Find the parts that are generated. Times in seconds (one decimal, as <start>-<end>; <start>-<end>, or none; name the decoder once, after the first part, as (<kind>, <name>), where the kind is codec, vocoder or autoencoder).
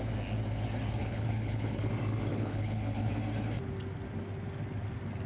1.0-1.9 (codec, HILCodec); 2.3-3.1